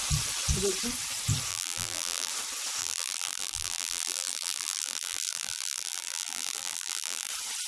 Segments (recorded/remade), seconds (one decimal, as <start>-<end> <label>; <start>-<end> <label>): 0.0-1.5 recorded; 1.5-2.3 remade; 2.3-2.8 recorded; 2.8-7.3 remade; 7.3-7.7 recorded